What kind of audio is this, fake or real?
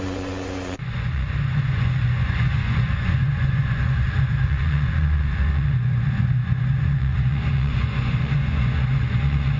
fake